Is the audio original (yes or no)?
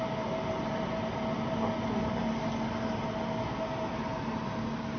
yes